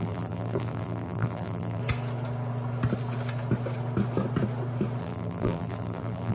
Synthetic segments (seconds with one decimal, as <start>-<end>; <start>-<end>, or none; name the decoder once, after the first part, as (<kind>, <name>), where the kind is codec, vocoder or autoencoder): 0.0-1.8 (vocoder, BigVGAN v2); 5.0-6.3